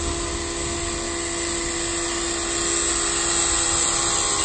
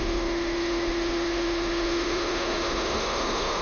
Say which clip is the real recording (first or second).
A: first